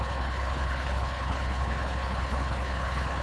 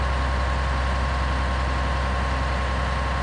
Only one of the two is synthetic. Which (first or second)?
first